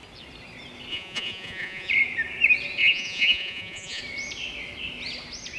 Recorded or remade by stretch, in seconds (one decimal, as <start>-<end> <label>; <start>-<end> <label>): 0.0-0.9 recorded; 0.9-1.9 remade; 1.9-2.8 recorded; 2.8-4.0 remade; 4.0-5.6 recorded